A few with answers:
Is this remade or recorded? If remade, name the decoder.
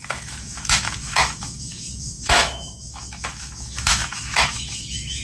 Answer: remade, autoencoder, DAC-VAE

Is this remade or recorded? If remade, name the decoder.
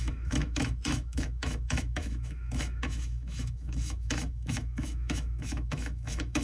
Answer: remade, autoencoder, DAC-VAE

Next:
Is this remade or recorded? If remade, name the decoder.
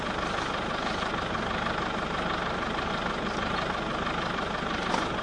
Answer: recorded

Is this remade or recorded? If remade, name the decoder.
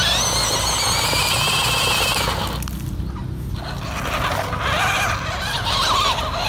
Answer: recorded